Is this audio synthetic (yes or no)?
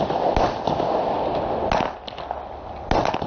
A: no